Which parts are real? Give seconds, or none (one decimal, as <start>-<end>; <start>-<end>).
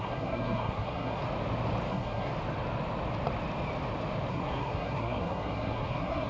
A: 1.2-1.9; 2.3-4.3